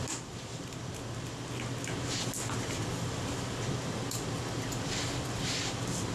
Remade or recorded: recorded